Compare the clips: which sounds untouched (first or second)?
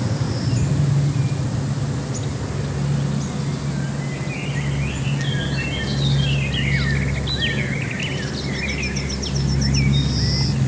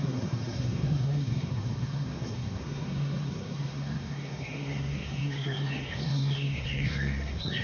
first